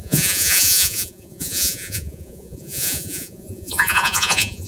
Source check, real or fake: fake